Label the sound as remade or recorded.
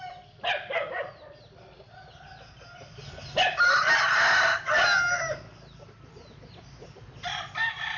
recorded